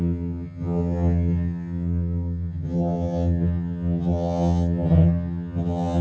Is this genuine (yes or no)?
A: no